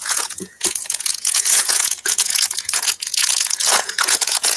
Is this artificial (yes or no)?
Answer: yes